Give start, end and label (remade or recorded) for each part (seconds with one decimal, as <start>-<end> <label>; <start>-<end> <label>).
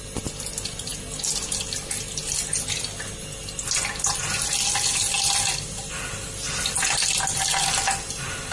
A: 0.0-8.5 recorded